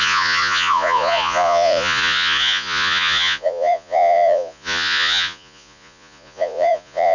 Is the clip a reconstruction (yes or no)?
yes